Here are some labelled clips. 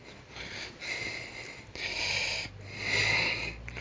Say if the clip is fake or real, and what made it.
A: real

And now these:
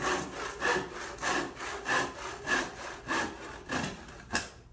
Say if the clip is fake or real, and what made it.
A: real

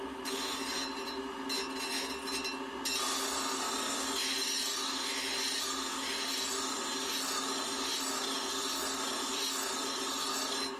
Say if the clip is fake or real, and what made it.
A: real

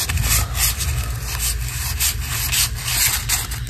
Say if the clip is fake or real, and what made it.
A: real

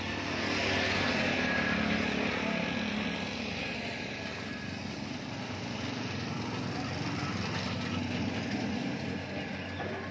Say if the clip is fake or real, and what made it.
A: real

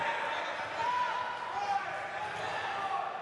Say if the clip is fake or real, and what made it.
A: real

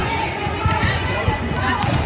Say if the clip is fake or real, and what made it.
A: fake, vocoder, Vocos